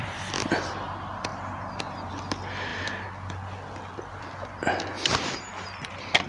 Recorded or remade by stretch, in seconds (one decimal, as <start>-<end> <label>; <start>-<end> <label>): 0.0-6.3 recorded